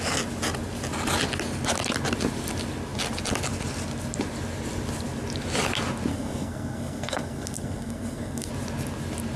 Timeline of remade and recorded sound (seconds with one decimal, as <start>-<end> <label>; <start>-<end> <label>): 0.0-6.1 recorded; 6.1-8.5 remade; 8.5-9.4 recorded